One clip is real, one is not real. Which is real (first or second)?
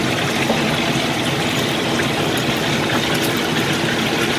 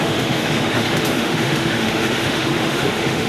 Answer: first